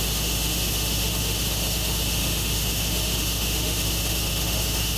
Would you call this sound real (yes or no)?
no